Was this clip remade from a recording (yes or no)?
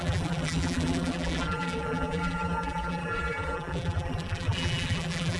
yes